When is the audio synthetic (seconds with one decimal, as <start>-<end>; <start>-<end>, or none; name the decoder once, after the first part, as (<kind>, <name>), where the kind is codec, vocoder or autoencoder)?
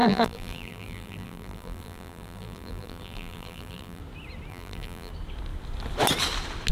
0.0-4.0 (vocoder, BigVGAN v2); 4.5-5.1